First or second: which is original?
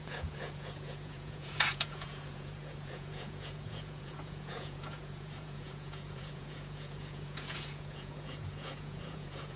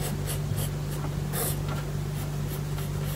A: second